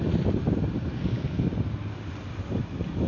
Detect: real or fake real